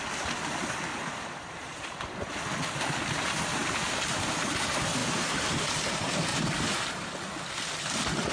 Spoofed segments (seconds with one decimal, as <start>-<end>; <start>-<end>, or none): 0.9-2.3; 3.6-4.2; 5.0-5.6; 6.3-7.1